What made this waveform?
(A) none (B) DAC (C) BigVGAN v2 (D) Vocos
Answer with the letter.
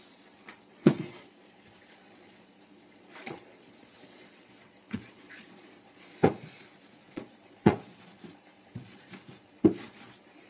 D